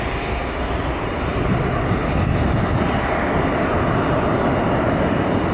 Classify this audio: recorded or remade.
recorded